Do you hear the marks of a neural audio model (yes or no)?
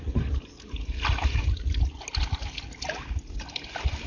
no